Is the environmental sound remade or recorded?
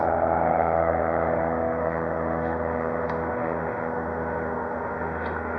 remade